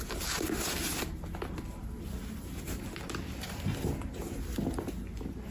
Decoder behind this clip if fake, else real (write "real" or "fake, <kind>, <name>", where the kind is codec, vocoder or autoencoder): real